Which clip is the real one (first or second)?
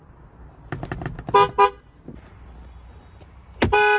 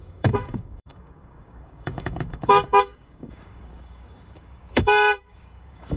first